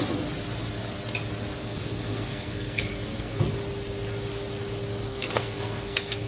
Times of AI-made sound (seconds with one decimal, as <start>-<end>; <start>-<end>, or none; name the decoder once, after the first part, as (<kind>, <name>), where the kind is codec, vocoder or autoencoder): 1.6-3.4 (codec, SNAC); 5.1-6.3